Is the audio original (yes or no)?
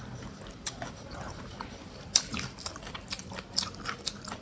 yes